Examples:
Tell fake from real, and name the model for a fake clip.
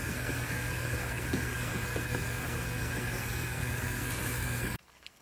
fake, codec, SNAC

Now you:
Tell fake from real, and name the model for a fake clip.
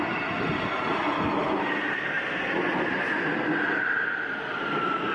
real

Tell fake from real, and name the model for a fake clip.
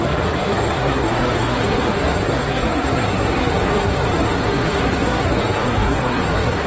fake, codec, SNAC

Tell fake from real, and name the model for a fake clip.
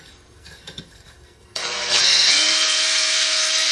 fake, codec, SNAC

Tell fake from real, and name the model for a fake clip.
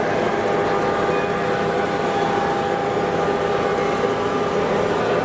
real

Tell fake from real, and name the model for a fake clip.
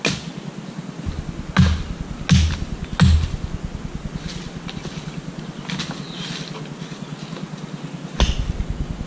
real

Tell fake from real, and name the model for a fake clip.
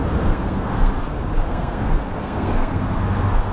fake, codec, SNAC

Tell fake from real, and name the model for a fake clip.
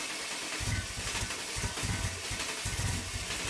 real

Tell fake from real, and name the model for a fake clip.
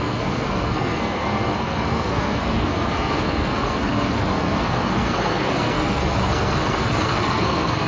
fake, codec, SNAC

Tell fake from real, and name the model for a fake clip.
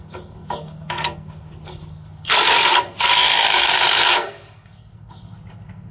fake, codec, SNAC